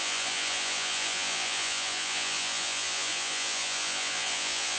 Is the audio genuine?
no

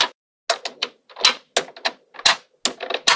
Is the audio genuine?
yes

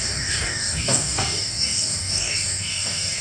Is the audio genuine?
no